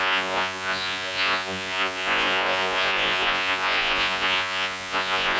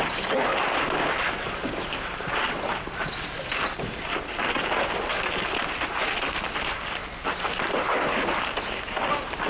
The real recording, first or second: second